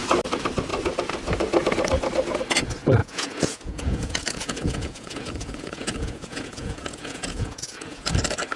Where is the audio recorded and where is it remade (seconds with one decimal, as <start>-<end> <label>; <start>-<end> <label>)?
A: 0.0-3.0 recorded; 3.0-8.1 remade; 8.1-8.6 recorded